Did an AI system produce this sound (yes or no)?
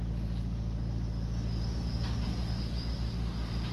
no